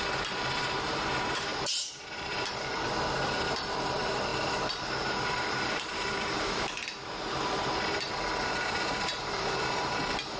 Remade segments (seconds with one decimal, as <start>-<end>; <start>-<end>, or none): 0.0-10.4